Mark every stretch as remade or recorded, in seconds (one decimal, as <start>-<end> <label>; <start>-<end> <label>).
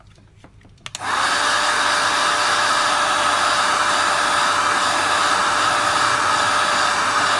0.0-7.4 recorded